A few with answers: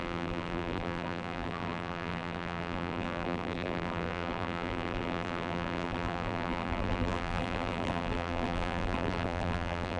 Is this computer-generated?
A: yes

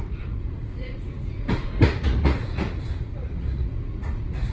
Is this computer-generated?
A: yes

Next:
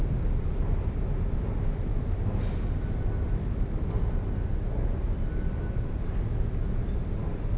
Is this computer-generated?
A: no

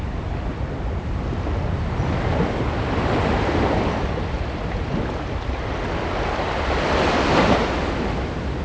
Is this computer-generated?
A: no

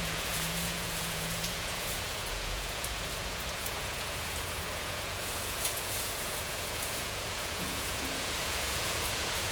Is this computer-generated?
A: yes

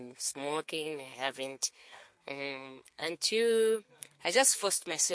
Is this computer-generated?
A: yes